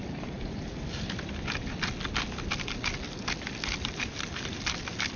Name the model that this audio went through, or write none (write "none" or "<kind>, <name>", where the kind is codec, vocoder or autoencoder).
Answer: none